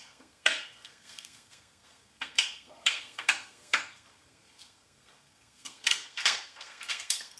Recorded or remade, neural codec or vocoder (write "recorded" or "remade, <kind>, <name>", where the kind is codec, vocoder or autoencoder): remade, codec, SNAC